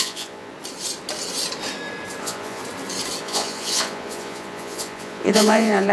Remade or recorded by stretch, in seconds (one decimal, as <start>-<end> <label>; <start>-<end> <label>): 0.0-0.5 remade; 0.5-2.2 recorded; 2.2-2.6 remade; 2.6-3.2 recorded; 3.2-5.9 remade